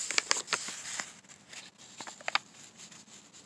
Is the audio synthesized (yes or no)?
no